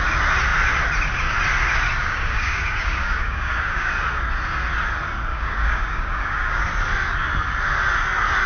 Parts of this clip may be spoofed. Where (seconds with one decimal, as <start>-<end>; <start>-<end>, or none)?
2.0-3.9; 5.3-6.6